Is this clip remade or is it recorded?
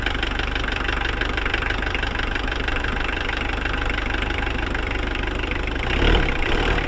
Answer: remade